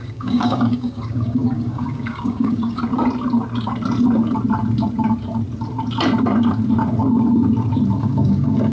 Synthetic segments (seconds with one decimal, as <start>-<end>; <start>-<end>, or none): 0.0-2.8; 8.0-8.7